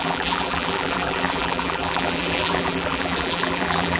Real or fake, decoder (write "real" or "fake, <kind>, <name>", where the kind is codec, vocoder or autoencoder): fake, vocoder, BigVGAN v2